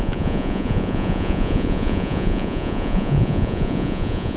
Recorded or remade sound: remade